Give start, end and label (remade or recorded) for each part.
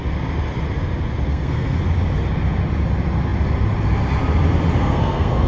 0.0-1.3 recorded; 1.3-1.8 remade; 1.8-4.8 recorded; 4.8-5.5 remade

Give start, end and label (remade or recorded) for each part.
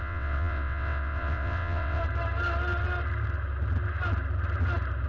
0.0-2.0 remade; 2.0-5.1 recorded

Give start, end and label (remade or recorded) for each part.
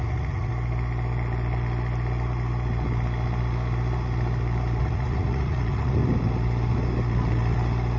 0.0-0.5 remade; 0.5-4.8 recorded; 4.8-6.0 remade; 6.0-8.0 recorded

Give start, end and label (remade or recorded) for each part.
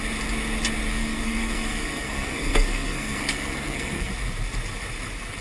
0.0-0.9 recorded; 0.9-4.1 remade; 4.1-5.4 recorded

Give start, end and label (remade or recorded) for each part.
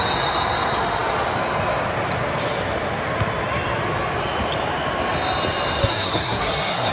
0.0-5.8 recorded; 5.8-6.9 remade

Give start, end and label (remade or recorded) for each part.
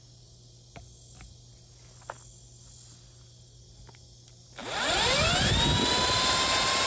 0.0-4.6 recorded; 4.6-6.9 remade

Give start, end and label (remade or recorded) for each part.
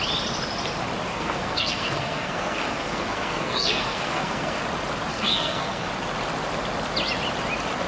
0.0-1.1 recorded; 1.1-4.6 remade; 4.6-5.1 recorded; 5.1-5.9 remade; 5.9-7.9 recorded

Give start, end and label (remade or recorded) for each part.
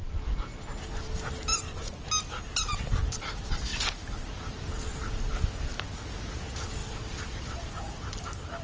0.0-8.6 recorded